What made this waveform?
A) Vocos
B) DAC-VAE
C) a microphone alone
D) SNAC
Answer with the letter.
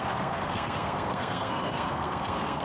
D